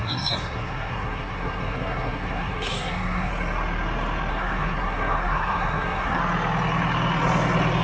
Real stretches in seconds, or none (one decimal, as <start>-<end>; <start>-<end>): 3.3-4.3; 6.2-7.8